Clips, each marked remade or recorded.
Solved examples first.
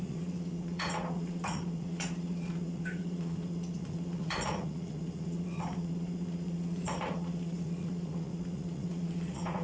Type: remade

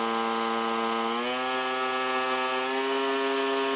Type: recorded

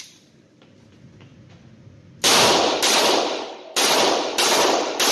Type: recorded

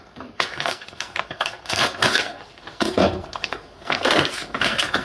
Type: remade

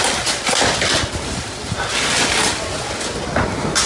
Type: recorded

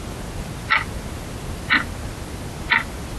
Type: recorded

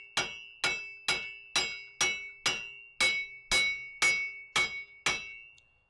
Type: recorded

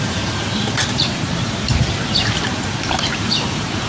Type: remade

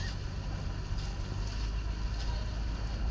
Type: recorded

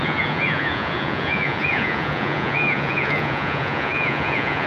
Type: remade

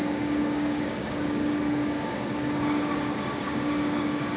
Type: remade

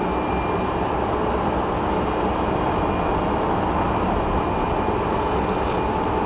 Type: recorded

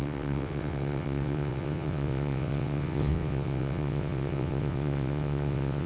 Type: remade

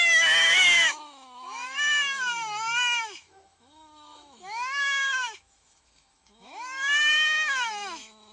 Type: remade